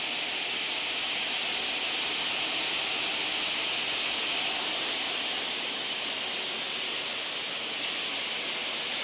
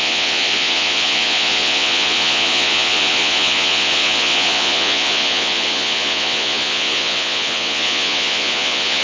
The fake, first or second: second